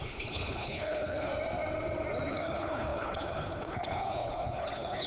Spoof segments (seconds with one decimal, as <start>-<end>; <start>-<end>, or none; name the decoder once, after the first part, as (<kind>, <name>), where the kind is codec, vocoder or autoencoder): 0.0-1.3 (codec, HILCodec); 2.3-5.1